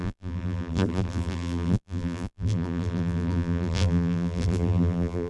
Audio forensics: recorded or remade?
remade